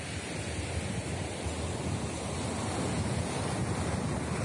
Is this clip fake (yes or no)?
no